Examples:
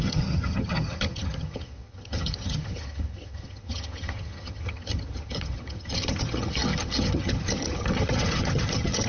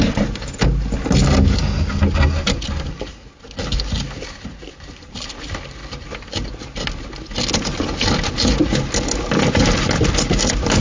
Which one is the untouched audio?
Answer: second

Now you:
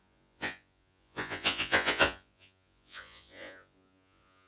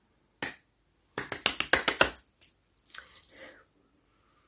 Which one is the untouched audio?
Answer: second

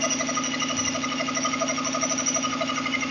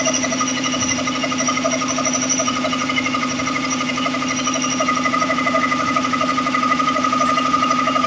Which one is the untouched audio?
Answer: first